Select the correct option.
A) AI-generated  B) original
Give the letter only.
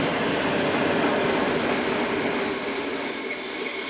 B